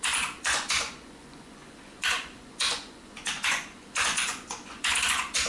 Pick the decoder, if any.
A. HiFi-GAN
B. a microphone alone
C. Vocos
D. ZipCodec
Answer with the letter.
C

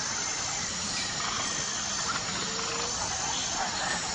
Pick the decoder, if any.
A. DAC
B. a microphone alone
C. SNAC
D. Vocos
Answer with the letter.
B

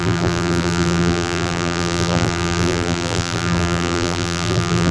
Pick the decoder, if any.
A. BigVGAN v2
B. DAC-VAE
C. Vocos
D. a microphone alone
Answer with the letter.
A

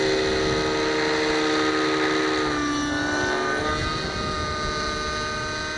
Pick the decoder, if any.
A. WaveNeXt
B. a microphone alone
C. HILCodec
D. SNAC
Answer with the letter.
B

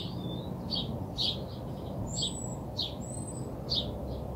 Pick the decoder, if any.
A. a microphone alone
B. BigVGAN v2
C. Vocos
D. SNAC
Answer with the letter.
A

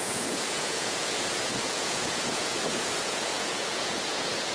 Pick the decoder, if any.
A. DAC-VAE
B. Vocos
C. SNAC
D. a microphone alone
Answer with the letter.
B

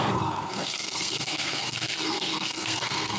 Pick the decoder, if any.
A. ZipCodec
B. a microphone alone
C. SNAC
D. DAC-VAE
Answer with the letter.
C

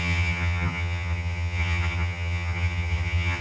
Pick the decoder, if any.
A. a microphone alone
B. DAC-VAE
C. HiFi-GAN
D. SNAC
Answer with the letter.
C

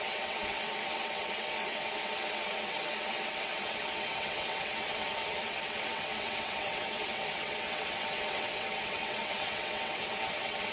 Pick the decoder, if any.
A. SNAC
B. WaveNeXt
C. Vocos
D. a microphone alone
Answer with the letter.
B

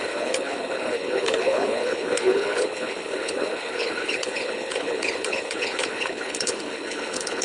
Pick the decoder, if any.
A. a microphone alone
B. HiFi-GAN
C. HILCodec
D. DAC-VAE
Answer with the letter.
C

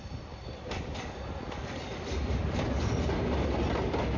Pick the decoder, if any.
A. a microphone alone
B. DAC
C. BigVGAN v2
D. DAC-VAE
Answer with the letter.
C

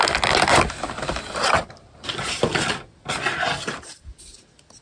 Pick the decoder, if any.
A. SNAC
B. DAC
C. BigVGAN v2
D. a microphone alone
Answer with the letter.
D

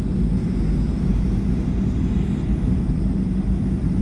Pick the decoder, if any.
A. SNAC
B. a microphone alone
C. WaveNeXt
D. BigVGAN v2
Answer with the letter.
B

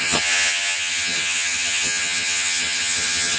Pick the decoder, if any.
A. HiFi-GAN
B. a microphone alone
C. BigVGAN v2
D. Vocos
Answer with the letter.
A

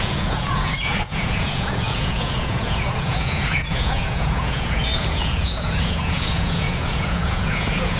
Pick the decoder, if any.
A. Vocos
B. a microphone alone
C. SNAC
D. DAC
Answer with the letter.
A